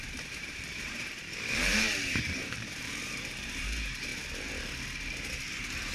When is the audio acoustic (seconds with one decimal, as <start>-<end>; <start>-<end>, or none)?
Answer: 4.1-5.5

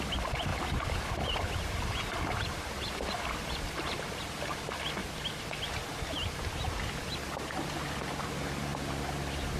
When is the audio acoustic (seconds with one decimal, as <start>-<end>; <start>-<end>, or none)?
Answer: 0.0-0.5; 4.0-5.0; 5.7-9.6